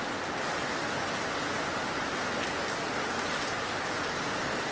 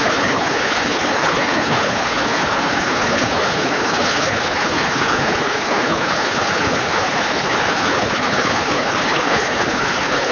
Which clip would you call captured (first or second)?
first